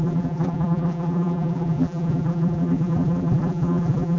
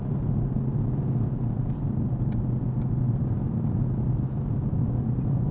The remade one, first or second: first